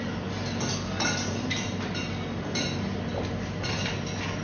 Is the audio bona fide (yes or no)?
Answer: yes